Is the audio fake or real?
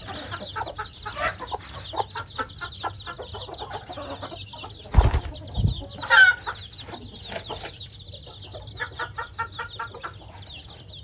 real